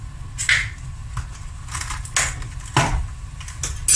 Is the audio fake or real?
real